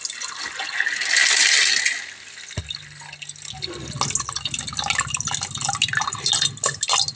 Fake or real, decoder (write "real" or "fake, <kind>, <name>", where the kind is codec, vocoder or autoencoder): real